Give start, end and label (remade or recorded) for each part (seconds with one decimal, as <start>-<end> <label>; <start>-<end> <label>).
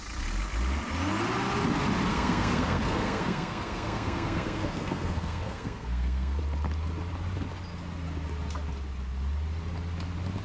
0.0-2.1 recorded; 2.1-6.4 remade; 6.4-10.4 recorded